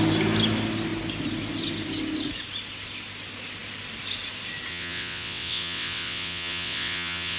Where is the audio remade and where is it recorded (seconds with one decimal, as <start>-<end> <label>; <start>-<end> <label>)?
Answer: 0.0-4.7 recorded; 4.7-7.4 remade